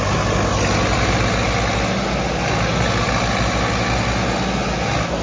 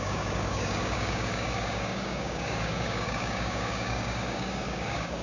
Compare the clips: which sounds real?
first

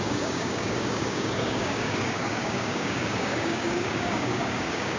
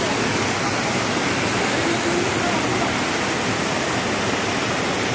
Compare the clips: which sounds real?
second